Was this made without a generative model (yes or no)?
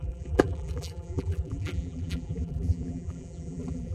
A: no